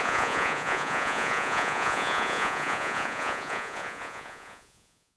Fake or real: fake